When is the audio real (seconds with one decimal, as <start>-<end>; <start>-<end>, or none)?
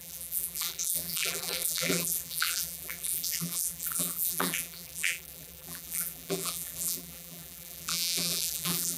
none